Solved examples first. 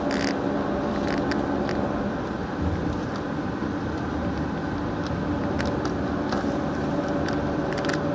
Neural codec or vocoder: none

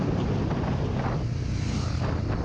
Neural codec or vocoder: none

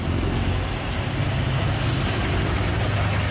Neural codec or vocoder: none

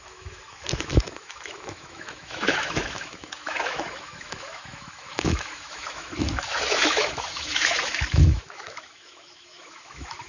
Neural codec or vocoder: autoencoder, DAC-VAE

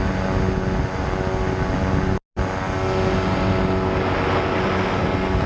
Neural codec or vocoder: none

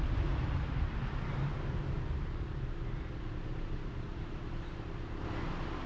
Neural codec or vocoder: none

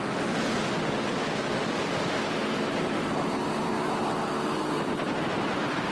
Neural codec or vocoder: none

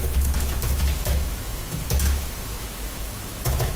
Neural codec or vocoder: autoencoder, DAC-VAE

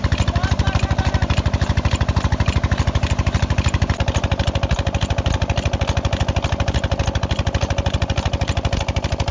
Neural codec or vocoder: none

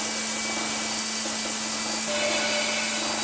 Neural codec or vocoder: none